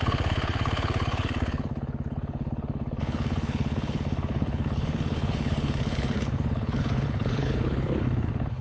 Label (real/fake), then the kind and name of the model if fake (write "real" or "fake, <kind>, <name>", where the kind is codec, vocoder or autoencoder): fake, codec, HILCodec